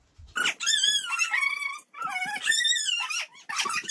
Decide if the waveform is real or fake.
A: real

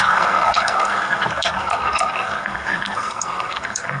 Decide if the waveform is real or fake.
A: fake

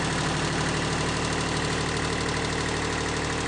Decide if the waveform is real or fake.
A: real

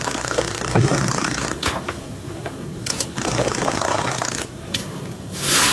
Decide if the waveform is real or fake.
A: fake